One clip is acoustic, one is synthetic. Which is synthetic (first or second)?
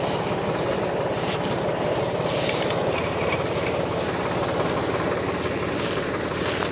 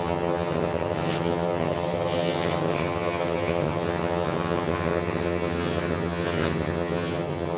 second